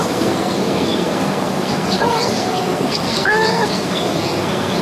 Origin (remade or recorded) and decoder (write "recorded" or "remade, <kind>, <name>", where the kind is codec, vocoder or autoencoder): remade, codec, SNAC